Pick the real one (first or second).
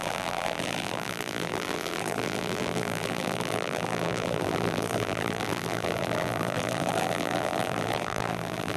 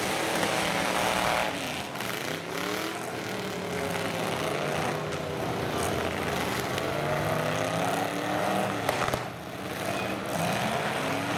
second